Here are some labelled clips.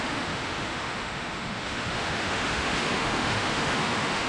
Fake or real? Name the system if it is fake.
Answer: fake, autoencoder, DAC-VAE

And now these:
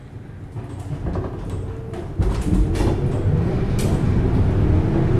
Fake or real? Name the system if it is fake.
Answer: real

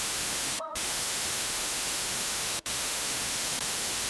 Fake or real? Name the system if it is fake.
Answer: fake, autoencoder, DAC-VAE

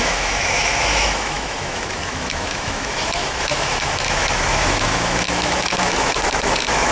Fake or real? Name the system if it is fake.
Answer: fake, autoencoder, DAC-VAE